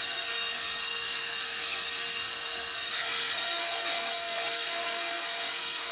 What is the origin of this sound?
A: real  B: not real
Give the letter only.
B